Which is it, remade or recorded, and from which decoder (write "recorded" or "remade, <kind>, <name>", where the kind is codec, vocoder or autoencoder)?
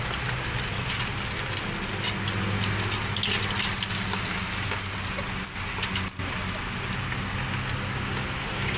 recorded